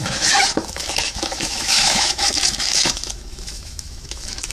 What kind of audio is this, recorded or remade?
remade